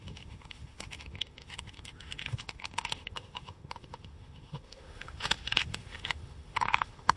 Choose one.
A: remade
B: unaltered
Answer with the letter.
A